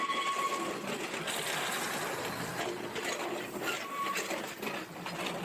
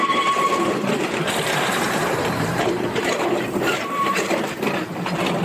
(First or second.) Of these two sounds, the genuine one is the first